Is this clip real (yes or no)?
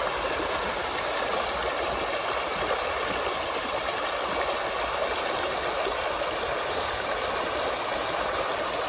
yes